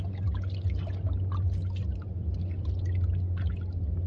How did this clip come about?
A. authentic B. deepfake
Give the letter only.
A